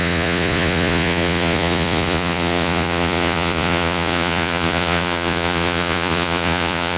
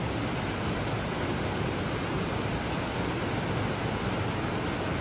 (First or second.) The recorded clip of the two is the second